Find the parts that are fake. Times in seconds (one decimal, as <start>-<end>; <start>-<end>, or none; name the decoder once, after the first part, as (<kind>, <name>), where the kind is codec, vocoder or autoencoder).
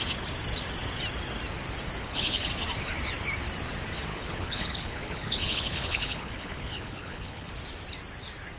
2.0-2.5 (codec, HILCodec); 4.1-7.5